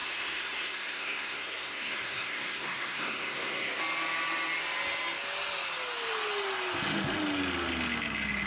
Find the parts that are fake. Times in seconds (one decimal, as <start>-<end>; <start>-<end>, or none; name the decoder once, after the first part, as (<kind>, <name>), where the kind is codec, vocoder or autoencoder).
0.0-3.8 (codec, SNAC)

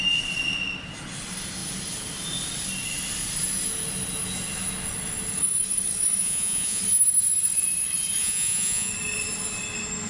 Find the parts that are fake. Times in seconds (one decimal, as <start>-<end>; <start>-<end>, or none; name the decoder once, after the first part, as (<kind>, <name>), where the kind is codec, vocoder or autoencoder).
6.2-6.8 (vocoder, Vocos); 8.2-8.9

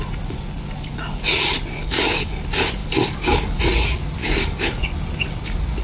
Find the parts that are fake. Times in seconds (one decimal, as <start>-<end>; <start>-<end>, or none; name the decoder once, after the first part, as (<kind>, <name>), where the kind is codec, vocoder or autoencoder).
1.8-2.4 (codec, DAC); 2.8-3.6; 4.2-4.8

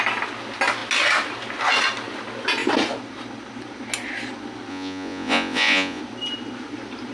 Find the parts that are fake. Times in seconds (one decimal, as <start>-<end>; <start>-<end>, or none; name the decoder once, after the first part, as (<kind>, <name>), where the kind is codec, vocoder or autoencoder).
4.7-6.0 (vocoder, Vocos)

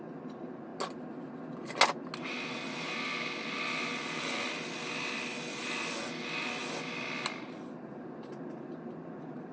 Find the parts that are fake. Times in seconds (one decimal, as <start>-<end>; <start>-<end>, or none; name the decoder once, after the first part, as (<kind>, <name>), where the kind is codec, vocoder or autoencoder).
none